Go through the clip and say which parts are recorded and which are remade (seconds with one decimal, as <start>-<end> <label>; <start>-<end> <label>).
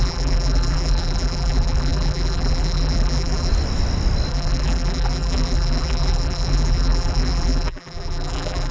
0.0-3.5 remade; 3.5-4.3 recorded; 4.3-8.7 remade